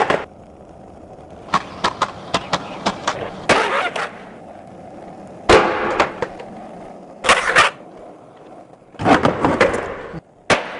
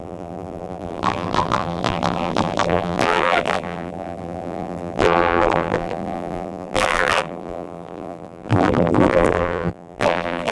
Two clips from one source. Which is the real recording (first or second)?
first